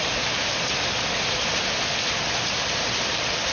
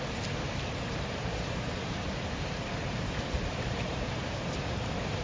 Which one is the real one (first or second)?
first